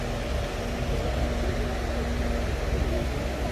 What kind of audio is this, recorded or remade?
recorded